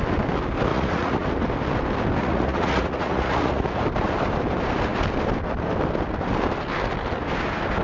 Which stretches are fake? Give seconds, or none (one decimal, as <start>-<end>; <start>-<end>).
0.7-1.3; 2.2-3.8